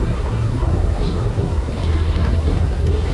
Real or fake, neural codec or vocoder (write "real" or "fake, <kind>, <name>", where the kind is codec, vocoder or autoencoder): fake, codec, SNAC